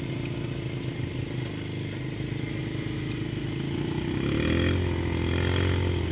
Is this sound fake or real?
real